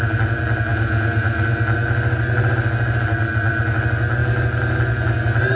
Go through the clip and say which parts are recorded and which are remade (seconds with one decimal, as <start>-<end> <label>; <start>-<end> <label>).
0.0-0.7 recorded; 0.7-1.4 remade; 1.4-5.6 recorded